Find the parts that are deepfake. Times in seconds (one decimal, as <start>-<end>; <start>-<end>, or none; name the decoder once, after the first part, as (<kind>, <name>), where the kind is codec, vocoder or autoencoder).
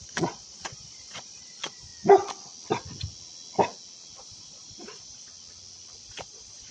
0.0-1.9 (vocoder, Vocos); 4.2-5.3; 6.0-6.7